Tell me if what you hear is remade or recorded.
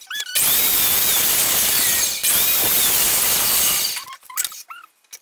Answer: recorded